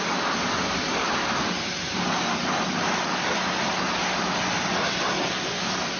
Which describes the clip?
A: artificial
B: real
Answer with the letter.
B